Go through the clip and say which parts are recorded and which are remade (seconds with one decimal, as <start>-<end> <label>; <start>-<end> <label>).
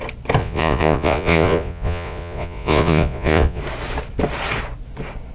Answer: 0.0-0.4 recorded; 0.4-3.6 remade; 3.6-5.3 recorded